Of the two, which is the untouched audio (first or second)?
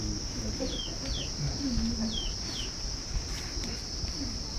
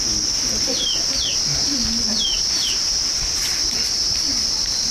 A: first